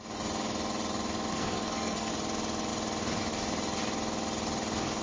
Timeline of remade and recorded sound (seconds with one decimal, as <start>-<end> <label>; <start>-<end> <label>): 0.0-1.3 recorded; 1.3-2.1 remade; 2.1-5.0 recorded